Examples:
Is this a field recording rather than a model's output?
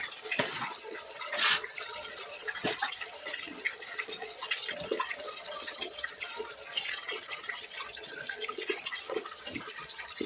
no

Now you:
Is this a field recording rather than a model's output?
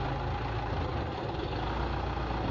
yes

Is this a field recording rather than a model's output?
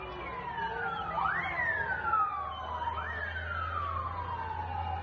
yes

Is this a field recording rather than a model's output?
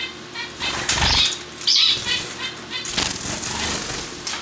yes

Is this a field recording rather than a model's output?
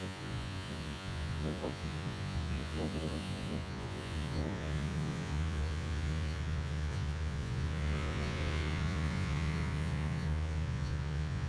no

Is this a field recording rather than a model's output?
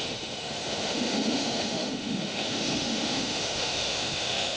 no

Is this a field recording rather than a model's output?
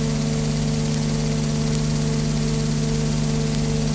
yes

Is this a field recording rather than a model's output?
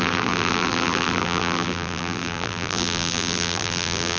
no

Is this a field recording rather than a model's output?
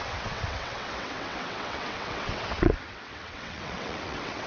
no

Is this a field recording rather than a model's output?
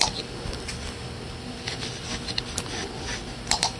yes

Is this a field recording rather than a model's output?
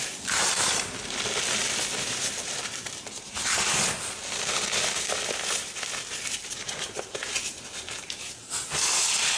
yes